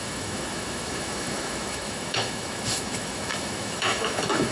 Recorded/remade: remade